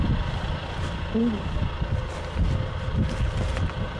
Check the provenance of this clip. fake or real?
real